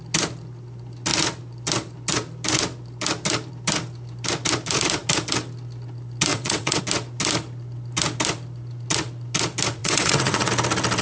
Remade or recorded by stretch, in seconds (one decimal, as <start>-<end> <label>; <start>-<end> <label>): 0.0-6.3 recorded; 6.3-6.8 remade; 6.8-9.8 recorded; 9.8-10.5 remade; 10.5-11.0 recorded